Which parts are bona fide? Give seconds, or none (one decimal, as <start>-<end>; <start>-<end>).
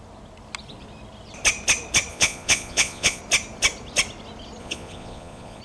0.0-2.1; 3.2-4.6